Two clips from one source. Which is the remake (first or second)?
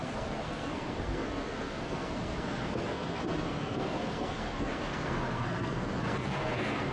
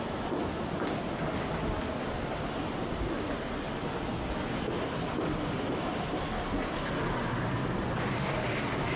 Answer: first